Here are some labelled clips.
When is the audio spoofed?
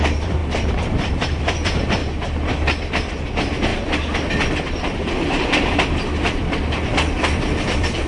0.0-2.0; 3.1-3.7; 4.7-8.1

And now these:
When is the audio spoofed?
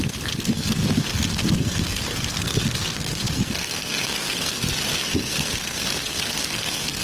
0.0-4.6; 5.1-7.0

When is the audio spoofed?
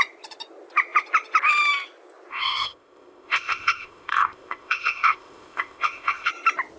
2.3-6.3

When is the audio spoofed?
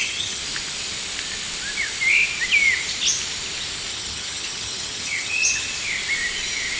0.0-0.4; 3.9-5.7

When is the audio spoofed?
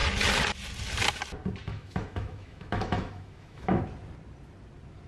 1.7-3.8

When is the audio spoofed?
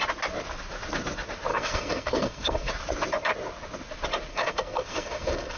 1.5-2.7; 4.3-5.6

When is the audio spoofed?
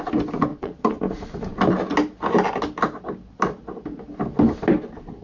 0.5-1.0